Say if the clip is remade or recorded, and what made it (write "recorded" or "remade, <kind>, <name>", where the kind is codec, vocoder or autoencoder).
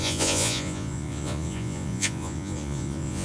remade, vocoder, Vocos